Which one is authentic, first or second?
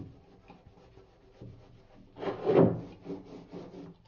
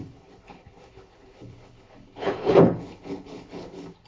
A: first